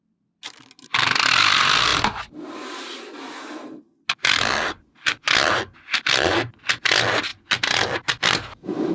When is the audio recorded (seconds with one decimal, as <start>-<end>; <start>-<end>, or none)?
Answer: 0.0-8.9